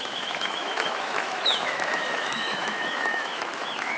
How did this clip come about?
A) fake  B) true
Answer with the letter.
A